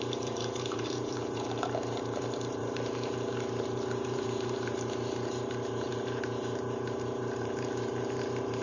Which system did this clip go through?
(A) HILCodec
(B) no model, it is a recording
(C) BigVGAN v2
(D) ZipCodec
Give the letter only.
C